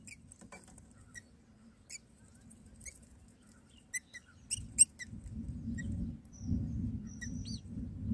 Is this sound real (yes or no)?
yes